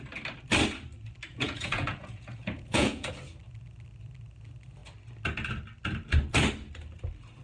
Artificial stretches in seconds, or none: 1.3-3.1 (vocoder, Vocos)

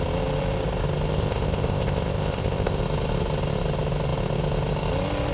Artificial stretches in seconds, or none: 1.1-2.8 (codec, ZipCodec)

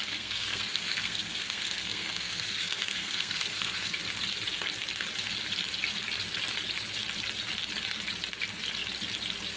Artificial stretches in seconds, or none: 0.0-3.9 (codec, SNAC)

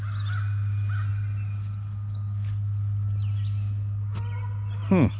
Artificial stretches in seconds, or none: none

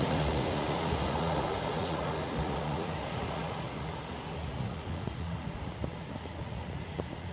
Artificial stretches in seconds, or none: 0.0-7.3 (vocoder, Vocos)

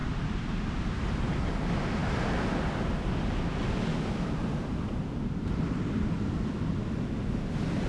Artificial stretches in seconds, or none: 0.0-1.5 (vocoder, BigVGAN v2)